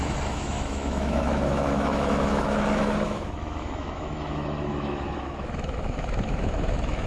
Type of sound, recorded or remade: remade